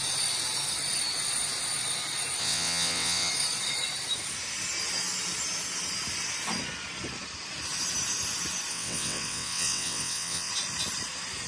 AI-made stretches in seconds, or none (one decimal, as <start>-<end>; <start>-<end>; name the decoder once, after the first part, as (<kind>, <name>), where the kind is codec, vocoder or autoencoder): 2.4-3.3 (vocoder, WaveNeXt); 8.7-10.5